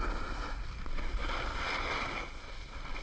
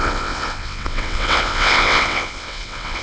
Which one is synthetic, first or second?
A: second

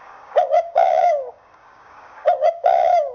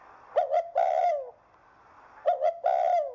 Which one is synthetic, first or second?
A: first